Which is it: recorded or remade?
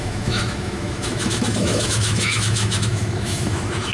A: remade